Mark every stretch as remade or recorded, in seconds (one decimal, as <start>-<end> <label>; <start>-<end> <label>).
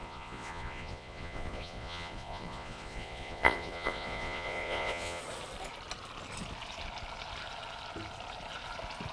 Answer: 0.0-5.2 remade; 5.2-9.1 recorded